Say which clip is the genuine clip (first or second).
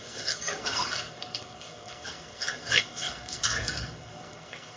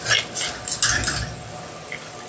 second